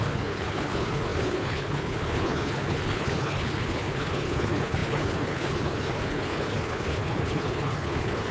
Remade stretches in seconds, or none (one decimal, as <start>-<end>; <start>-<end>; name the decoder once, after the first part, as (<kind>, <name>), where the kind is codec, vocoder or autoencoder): 0.0-8.3 (codec, HILCodec)